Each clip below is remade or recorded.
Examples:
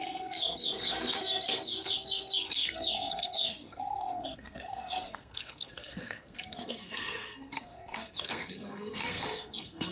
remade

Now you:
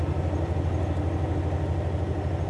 recorded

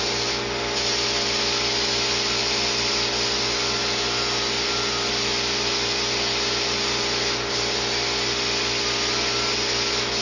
recorded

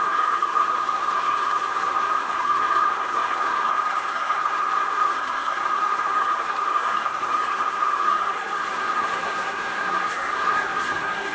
remade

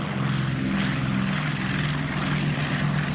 recorded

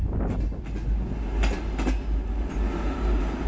recorded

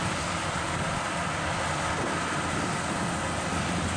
recorded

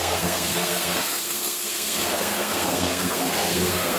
remade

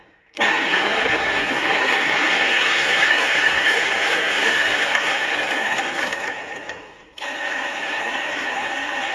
remade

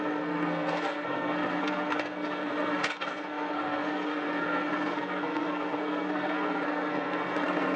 remade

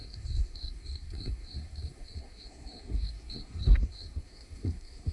remade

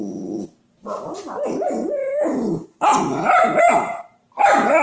recorded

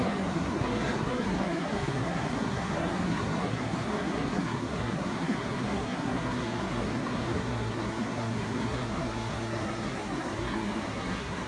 remade